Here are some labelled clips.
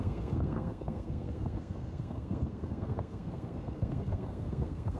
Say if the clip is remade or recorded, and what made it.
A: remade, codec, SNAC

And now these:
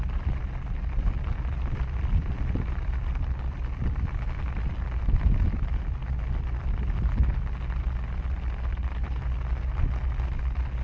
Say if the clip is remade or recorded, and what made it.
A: recorded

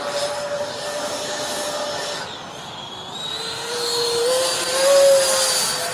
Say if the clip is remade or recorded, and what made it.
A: recorded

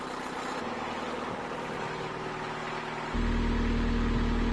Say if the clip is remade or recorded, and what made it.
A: recorded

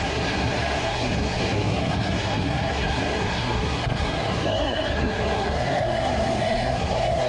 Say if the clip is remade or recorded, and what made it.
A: remade, codec, SNAC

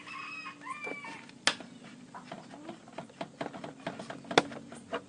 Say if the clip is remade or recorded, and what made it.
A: recorded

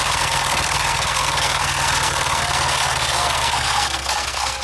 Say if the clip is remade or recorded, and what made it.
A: remade, codec, SNAC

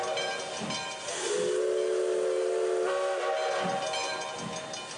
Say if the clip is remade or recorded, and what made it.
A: recorded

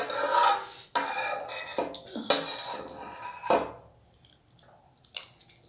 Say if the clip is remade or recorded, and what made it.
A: recorded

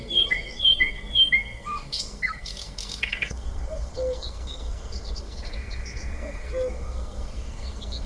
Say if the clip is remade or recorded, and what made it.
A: remade, codec, SNAC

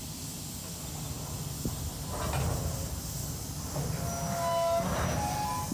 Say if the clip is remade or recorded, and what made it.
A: recorded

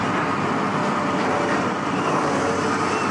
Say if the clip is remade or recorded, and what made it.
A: recorded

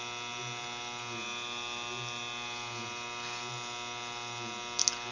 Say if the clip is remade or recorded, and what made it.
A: recorded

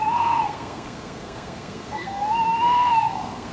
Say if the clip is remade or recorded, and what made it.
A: remade, codec, SNAC